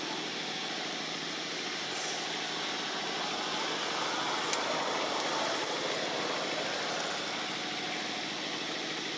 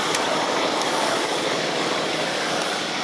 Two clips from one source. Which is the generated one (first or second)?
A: second